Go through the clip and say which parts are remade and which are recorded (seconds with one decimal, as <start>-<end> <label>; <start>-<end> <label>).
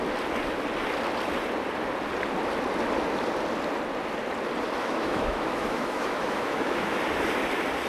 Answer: 0.0-4.8 recorded; 4.8-7.0 remade; 7.0-7.9 recorded